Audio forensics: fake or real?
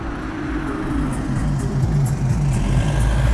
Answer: real